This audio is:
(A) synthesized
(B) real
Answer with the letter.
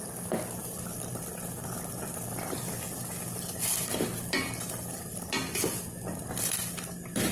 B